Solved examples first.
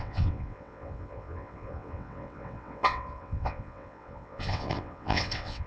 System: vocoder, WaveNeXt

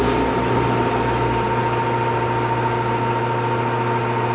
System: none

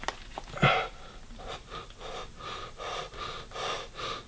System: none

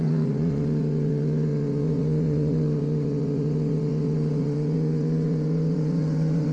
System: vocoder, WaveNeXt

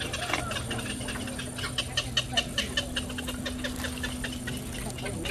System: none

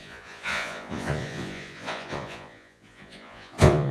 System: vocoder, Vocos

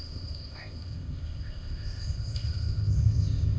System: codec, ZipCodec